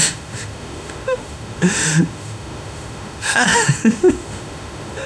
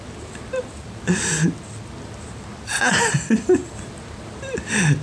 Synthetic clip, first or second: first